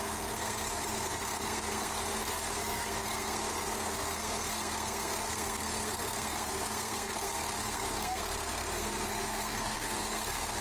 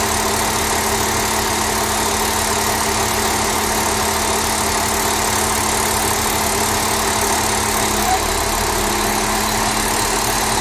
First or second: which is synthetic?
first